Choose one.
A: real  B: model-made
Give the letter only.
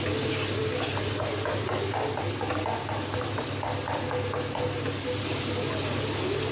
A